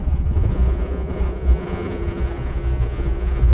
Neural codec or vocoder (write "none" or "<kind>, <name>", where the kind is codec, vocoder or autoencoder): vocoder, Vocos